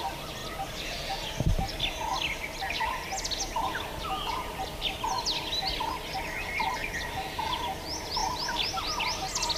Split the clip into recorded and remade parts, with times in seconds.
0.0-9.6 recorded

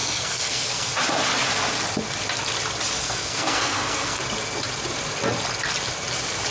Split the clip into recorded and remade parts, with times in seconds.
0.0-0.9 remade; 0.9-3.0 recorded; 3.0-4.2 remade; 4.2-6.5 recorded